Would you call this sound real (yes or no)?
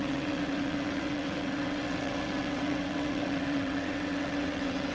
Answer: no